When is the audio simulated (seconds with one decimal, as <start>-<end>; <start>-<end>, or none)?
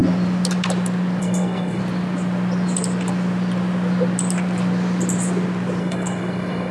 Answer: 1.2-1.8; 5.8-6.7